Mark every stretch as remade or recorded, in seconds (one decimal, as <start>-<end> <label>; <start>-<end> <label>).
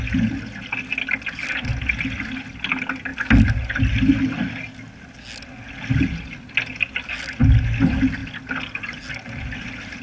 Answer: 0.0-10.0 recorded